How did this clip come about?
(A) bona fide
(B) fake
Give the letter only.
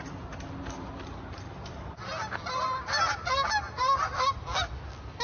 A